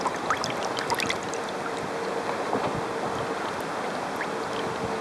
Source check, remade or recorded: recorded